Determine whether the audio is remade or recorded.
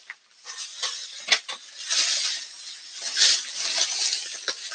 recorded